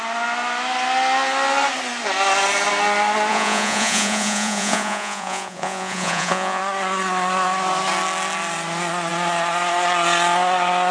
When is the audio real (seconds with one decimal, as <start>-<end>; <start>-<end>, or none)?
0.0-3.3; 6.6-10.9